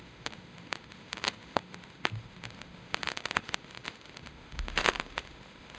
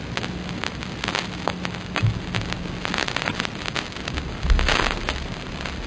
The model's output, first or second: first